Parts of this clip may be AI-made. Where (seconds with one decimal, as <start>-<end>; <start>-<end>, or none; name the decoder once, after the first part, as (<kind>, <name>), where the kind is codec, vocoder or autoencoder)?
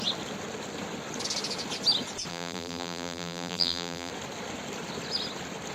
2.3-4.1 (vocoder, BigVGAN v2)